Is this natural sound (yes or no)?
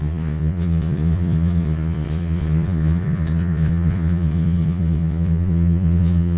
no